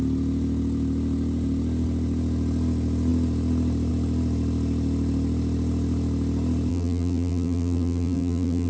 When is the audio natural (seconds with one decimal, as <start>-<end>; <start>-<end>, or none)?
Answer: 0.0-6.7